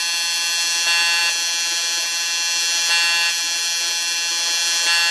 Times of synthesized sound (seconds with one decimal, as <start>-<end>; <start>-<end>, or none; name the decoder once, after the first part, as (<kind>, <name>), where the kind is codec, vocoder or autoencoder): none